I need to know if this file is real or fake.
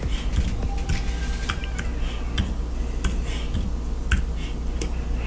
real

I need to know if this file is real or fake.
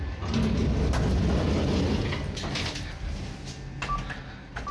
real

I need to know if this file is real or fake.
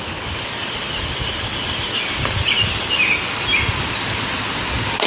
real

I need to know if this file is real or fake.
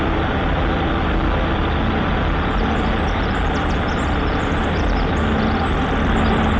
fake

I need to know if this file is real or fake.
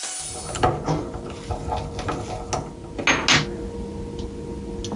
real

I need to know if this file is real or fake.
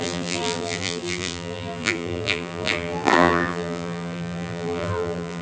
fake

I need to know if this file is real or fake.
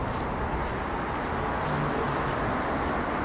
real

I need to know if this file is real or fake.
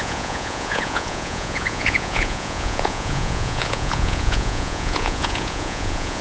fake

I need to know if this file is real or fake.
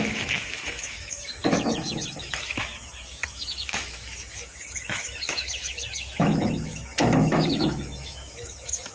fake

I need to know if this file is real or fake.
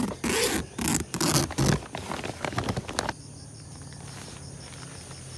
real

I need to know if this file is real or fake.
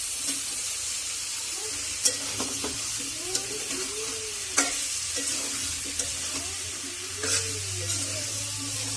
real